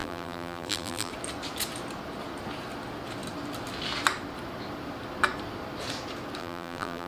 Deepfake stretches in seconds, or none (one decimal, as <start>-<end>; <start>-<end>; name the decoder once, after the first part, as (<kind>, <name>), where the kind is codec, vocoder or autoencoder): 0.0-1.1 (vocoder, BigVGAN v2); 6.4-7.1

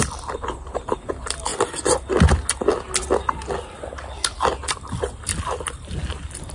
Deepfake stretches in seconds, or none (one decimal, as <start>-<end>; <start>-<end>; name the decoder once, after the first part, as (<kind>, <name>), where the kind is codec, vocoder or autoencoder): 0.0-1.5 (vocoder, BigVGAN v2); 5.4-6.5

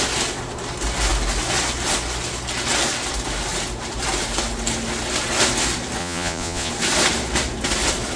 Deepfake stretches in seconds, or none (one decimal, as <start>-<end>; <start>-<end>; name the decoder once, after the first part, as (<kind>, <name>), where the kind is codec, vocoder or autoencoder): 6.0-6.7 (vocoder, Vocos)

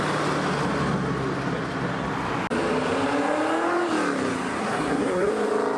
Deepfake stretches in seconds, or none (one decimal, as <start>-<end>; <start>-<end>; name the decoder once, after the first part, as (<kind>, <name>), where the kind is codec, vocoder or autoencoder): 4.6-5.3 (codec, SNAC)